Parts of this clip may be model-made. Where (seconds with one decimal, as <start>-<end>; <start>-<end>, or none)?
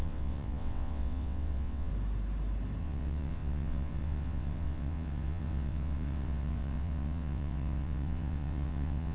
0.0-1.9; 2.8-9.1